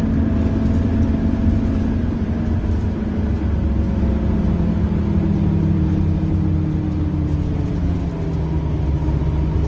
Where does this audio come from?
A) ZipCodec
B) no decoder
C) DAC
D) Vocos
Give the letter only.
B